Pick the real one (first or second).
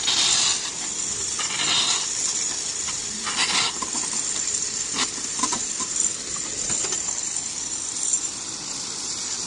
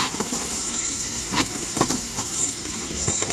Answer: first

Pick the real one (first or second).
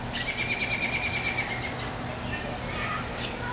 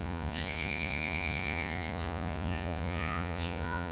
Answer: first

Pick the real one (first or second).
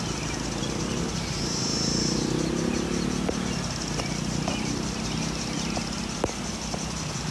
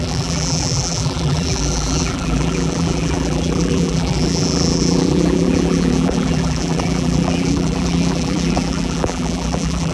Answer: first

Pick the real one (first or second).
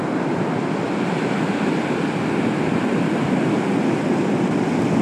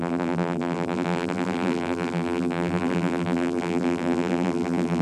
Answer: first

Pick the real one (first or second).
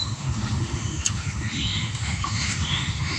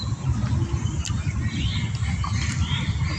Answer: second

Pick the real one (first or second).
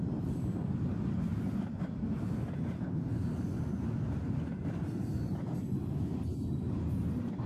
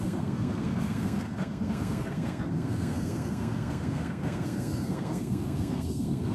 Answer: first